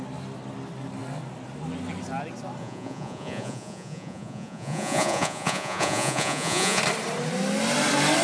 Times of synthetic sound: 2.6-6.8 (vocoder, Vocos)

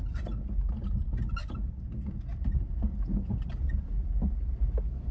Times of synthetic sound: none

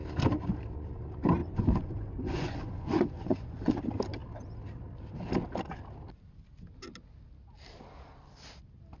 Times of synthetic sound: 1.4-3.8 (vocoder, Vocos)

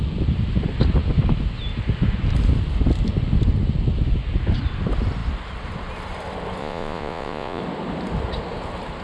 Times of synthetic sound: 6.6-7.6 (vocoder, Vocos)

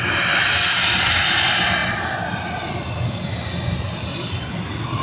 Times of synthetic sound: none

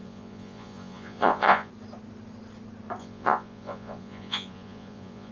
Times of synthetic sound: 0.0-1.7 (vocoder, Vocos); 3.0-5.3